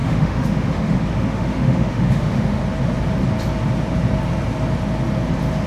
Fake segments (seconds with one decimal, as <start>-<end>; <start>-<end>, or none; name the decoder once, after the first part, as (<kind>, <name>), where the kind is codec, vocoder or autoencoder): 0.0-2.6 (autoencoder, DAC-VAE)